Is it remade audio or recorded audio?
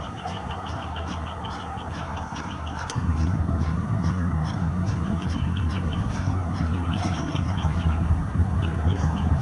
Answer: remade